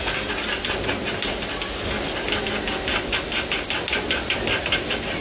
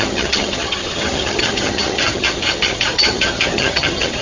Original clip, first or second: first